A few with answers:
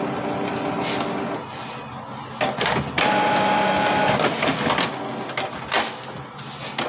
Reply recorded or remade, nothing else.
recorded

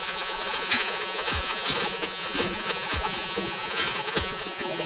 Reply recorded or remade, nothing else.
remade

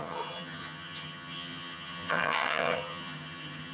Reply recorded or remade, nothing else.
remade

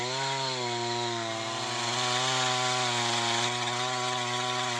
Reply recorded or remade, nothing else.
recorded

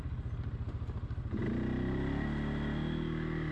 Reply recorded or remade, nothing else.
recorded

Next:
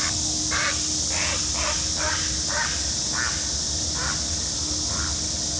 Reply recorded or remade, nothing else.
recorded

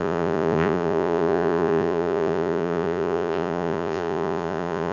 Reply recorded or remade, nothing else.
remade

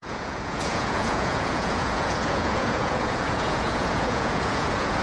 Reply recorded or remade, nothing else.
remade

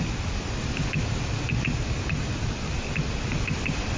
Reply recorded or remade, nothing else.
recorded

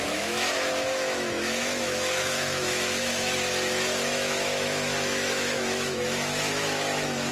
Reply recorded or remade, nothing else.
remade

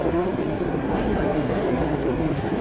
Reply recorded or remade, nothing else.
remade